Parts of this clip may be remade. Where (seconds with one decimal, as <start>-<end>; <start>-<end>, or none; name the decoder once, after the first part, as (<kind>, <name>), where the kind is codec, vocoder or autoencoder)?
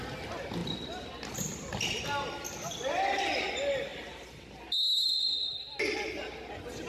none